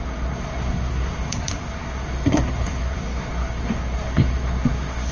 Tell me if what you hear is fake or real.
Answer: fake